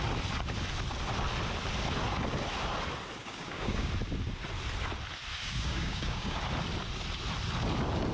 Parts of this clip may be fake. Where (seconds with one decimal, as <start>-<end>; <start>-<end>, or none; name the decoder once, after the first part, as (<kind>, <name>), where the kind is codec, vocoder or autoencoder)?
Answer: 3.2-3.9 (codec, DAC); 5.3-6.4